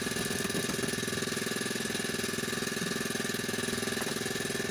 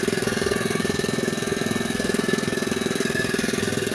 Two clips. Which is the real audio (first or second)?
first